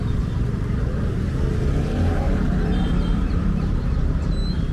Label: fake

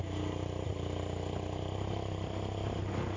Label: real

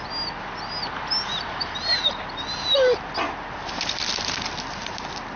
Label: real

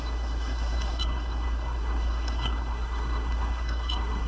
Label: fake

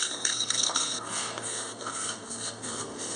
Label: fake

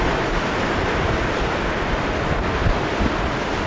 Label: real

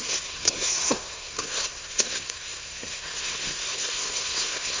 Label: fake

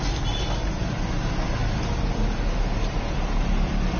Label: real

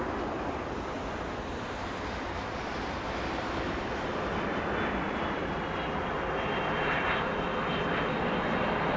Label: real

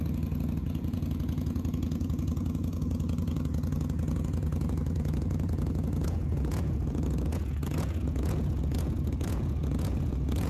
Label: fake